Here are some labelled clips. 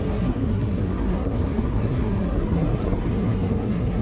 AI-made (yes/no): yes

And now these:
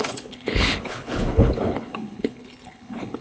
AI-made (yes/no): yes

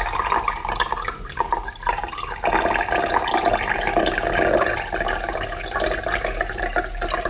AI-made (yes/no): no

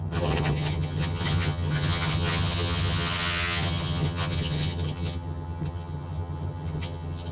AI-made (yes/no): yes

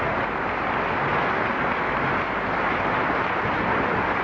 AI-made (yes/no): no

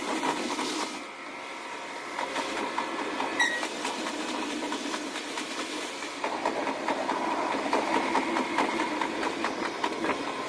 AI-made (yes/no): no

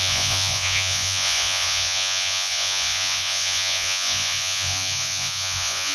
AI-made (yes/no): yes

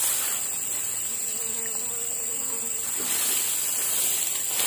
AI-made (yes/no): no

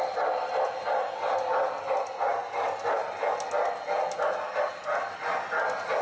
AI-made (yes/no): no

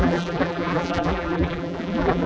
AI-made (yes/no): yes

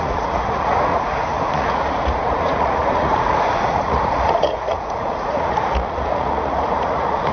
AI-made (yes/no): yes